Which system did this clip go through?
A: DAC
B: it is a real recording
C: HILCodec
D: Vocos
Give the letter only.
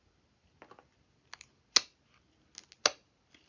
B